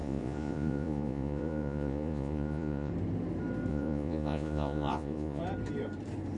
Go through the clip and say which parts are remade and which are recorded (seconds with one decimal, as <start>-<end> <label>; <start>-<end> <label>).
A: 0.0-2.9 remade; 2.9-3.7 recorded; 3.7-5.4 remade; 5.4-6.4 recorded